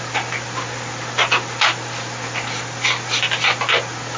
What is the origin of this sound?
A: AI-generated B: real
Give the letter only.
B